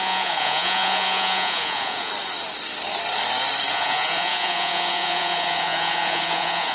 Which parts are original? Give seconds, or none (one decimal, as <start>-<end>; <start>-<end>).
2.1-3.7